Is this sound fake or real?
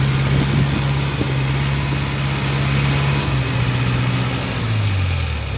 real